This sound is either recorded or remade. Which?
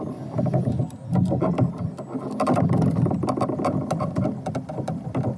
recorded